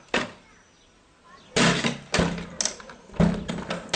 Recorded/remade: recorded